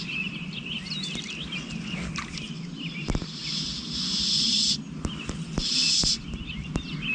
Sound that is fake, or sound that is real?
real